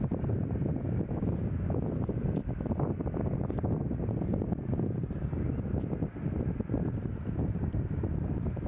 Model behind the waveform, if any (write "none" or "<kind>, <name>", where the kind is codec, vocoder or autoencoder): vocoder, BigVGAN v2